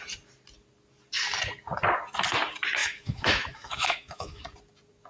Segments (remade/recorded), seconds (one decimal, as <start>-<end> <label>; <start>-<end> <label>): 0.0-2.8 recorded; 2.8-4.4 remade; 4.4-5.1 recorded